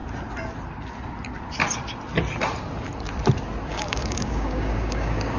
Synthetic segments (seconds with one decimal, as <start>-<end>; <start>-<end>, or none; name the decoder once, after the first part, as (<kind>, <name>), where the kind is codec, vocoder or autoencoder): 3.7-5.4 (codec, DAC)